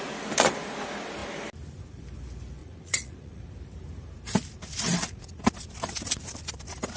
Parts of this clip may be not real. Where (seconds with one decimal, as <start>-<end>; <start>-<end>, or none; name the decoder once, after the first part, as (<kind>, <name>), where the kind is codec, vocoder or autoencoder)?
2.6-3.4 (vocoder, Vocos)